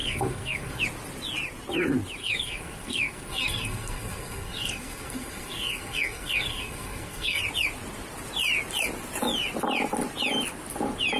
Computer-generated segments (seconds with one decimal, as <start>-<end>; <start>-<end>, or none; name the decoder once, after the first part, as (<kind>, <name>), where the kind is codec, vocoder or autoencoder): 0.0-0.8 (codec, SNAC); 2.2-7.4